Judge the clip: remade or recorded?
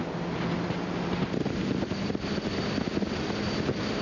recorded